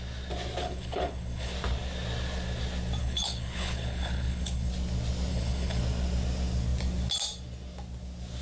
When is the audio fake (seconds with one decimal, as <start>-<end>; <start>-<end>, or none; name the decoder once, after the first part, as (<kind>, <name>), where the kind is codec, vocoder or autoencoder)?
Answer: 0.6-1.5 (codec, HILCodec); 3.0-4.7; 5.3-5.8